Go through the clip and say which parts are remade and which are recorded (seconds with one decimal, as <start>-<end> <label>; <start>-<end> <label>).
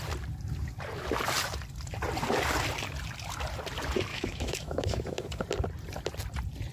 0.0-4.1 recorded; 4.1-5.4 remade; 5.4-6.7 recorded